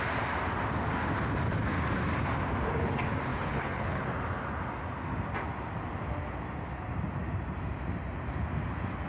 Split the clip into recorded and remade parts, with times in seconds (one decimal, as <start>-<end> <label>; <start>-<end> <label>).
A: 0.0-3.3 recorded; 3.3-4.0 remade; 4.0-9.1 recorded